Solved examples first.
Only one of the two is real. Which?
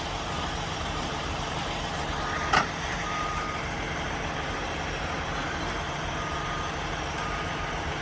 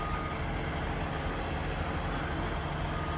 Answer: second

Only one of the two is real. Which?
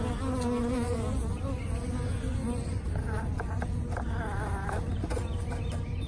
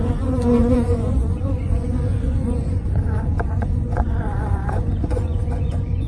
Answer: first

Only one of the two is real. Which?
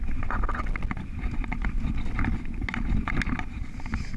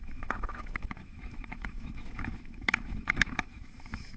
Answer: first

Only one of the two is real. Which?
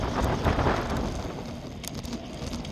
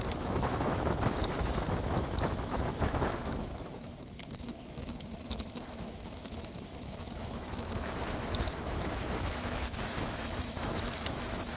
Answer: first